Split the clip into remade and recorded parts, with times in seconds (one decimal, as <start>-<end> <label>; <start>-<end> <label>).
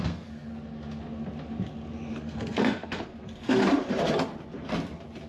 0.0-0.5 remade; 0.5-2.1 recorded; 2.1-3.6 remade; 3.6-5.3 recorded